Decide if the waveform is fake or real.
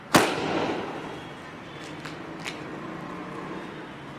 real